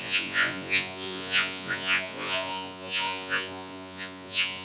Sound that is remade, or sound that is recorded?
remade